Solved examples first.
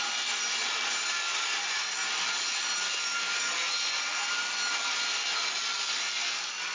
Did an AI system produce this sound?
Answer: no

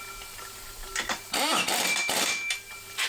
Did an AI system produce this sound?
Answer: no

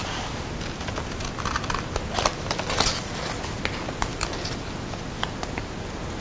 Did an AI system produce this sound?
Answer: no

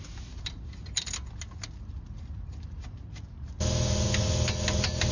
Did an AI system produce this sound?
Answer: no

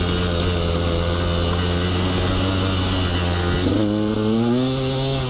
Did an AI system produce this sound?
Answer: no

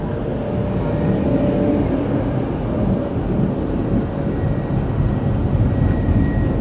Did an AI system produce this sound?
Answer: no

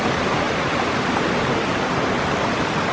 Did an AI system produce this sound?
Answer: no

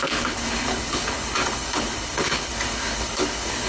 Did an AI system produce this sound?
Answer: yes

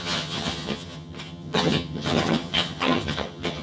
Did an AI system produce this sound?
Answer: yes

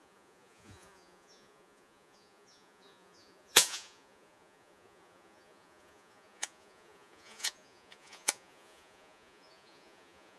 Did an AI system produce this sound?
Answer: yes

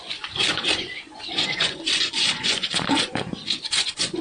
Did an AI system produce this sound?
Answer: yes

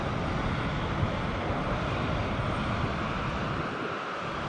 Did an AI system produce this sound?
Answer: no